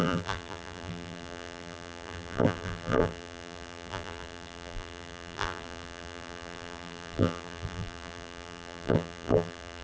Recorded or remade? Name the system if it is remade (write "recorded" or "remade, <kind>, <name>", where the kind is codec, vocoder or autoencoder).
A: remade, vocoder, BigVGAN v2